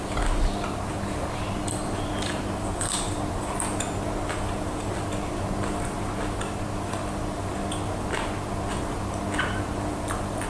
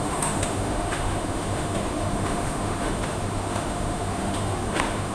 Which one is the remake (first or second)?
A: second